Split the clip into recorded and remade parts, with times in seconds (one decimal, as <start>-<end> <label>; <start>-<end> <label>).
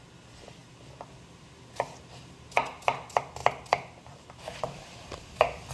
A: 0.0-5.7 recorded